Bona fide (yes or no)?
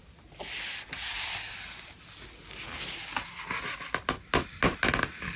yes